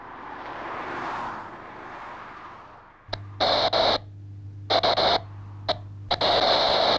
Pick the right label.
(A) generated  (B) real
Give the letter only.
B